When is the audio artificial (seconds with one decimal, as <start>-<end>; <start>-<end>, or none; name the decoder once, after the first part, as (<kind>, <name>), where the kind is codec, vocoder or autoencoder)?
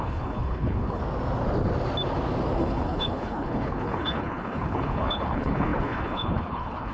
0.0-1.0 (codec, HILCodec); 2.6-6.9